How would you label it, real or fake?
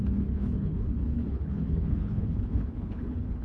fake